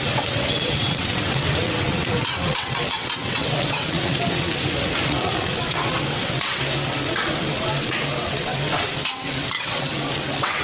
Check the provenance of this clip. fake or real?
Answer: fake